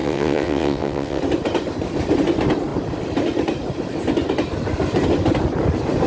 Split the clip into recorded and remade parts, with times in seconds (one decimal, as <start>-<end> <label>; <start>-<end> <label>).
0.0-1.2 remade; 1.2-6.1 recorded